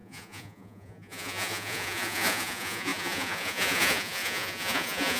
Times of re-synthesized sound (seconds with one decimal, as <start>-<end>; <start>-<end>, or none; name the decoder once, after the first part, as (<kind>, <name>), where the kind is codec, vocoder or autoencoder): 0.0-5.2 (vocoder, Vocos)